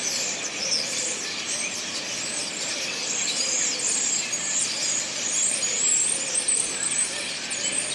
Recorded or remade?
recorded